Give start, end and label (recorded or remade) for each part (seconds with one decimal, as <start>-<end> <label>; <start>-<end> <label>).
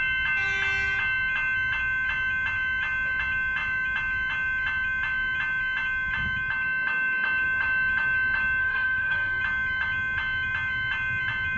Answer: 0.0-8.6 recorded; 8.6-9.4 remade; 9.4-11.6 recorded